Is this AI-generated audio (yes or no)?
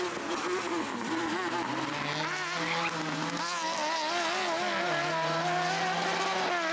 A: no